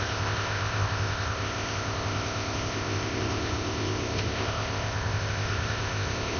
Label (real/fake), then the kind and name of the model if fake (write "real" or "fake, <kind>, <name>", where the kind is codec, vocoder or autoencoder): fake, codec, ZipCodec